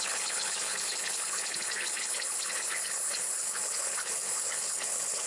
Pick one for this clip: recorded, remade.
remade